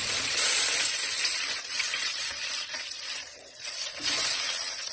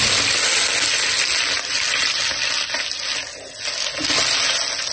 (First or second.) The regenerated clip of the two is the first